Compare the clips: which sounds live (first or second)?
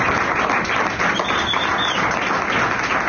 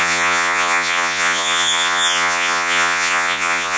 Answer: first